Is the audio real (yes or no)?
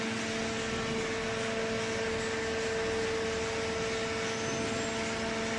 yes